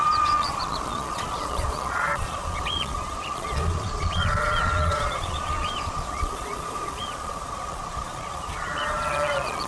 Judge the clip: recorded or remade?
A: remade